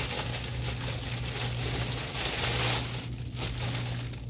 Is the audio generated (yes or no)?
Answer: no